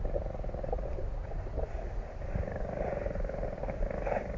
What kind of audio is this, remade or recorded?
recorded